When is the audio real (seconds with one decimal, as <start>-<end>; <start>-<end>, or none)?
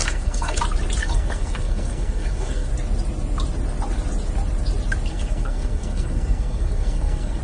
0.6-1.0; 2.7-5.1